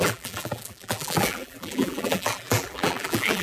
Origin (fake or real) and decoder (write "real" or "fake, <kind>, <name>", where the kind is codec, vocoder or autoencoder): fake, vocoder, BigVGAN v2